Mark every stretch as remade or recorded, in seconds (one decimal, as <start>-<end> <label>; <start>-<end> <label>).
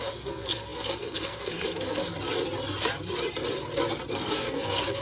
0.0-2.0 remade; 2.0-4.1 recorded; 4.1-5.0 remade